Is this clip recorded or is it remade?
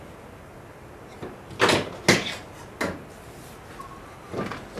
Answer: recorded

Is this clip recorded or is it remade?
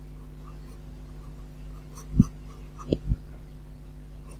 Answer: recorded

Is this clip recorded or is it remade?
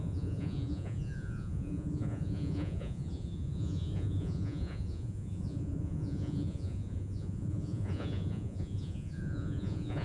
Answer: remade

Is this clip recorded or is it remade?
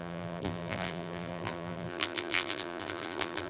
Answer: remade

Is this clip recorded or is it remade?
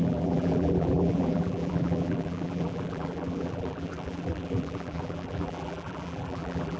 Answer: remade